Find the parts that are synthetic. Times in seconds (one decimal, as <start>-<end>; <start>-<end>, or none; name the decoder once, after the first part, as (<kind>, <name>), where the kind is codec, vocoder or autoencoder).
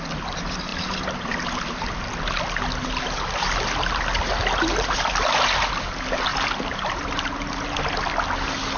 none